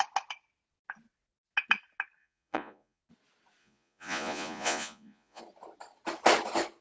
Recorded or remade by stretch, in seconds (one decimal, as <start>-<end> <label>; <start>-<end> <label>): 0.0-2.2 recorded; 2.2-3.0 remade; 3.0-3.6 recorded; 3.6-5.4 remade; 5.4-6.8 recorded